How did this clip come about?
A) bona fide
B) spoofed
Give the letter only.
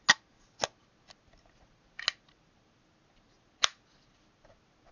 A